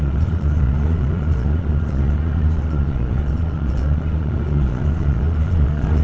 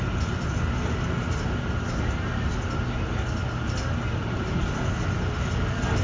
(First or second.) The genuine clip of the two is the second